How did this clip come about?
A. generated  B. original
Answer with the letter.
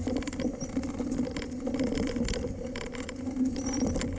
B